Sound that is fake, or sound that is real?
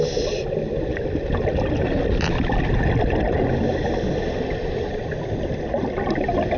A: real